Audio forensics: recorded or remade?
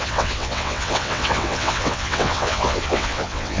remade